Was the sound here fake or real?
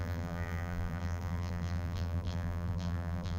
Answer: fake